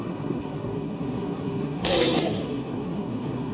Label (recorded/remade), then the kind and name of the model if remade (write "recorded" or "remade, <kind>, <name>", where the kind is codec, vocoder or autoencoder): remade, codec, SNAC